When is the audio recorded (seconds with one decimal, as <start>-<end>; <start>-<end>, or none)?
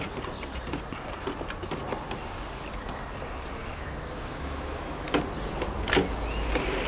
0.0-3.6; 5.2-6.9